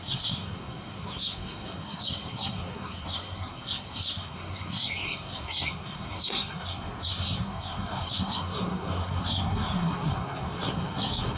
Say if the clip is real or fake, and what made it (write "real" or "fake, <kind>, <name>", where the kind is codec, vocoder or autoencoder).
fake, codec, SNAC